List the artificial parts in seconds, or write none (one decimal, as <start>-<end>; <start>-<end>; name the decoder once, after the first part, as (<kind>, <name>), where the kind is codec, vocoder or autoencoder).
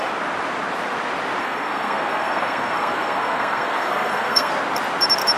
1.4-4.5 (codec, SNAC)